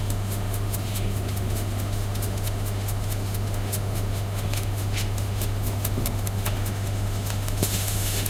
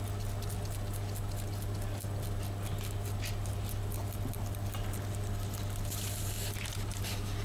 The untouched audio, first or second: second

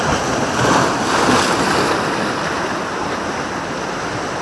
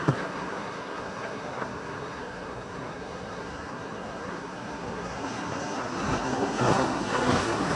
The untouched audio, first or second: first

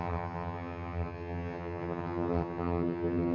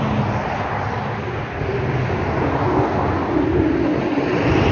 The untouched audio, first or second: second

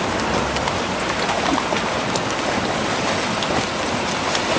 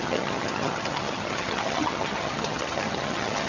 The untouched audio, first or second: first